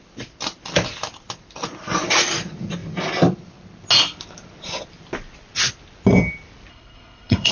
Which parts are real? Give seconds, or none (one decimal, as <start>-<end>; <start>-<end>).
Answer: 0.0-6.7